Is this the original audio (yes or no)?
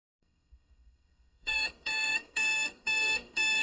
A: no